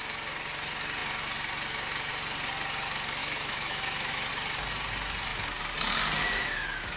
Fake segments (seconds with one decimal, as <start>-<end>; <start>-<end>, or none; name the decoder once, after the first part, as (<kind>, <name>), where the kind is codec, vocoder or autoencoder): 3.2-4.3 (autoencoder, DAC-VAE)